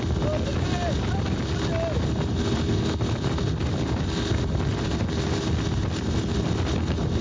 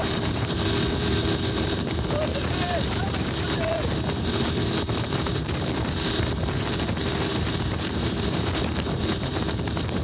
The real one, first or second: first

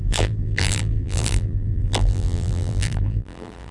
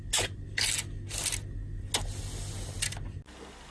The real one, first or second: second